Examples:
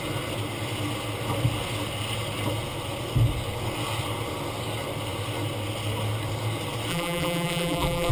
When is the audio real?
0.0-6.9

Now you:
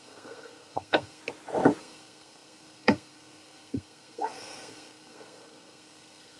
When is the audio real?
1.2-1.8

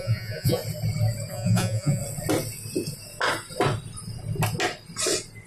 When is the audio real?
0.6-1.3; 2.0-5.5

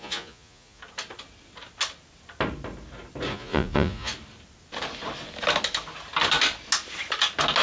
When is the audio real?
0.8-3.3; 4.1-7.6

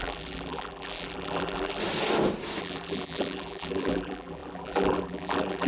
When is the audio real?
1.8-2.6

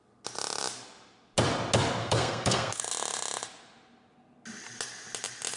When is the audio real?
0.0-2.0; 2.8-5.6

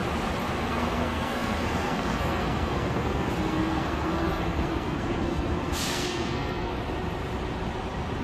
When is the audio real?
0.0-0.6; 6.7-8.2